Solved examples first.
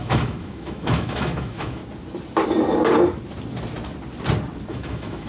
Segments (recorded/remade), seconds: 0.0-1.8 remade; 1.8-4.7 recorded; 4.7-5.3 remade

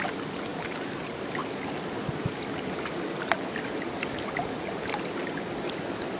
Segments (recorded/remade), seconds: 0.0-6.2 recorded

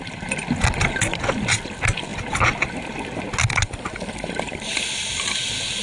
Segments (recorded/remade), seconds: 0.0-5.8 recorded

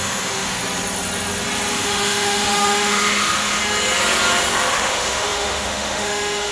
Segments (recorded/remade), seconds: 0.0-0.6 remade; 0.6-1.7 recorded; 1.7-3.6 remade; 3.6-4.7 recorded; 4.7-6.5 remade

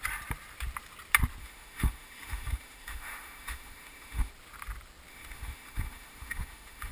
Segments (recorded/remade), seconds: 0.0-1.4 recorded; 1.4-4.3 remade; 4.3-5.1 recorded; 5.1-6.9 remade

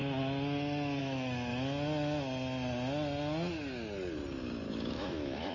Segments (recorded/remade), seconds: 0.0-1.0 recorded; 1.0-1.5 remade; 1.5-4.7 recorded; 4.7-5.5 remade

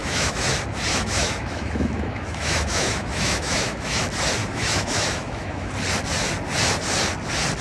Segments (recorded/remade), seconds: 0.0-0.5 remade; 0.5-0.9 recorded; 0.9-4.0 remade; 4.0-4.4 recorded; 4.4-5.7 remade; 5.7-7.6 recorded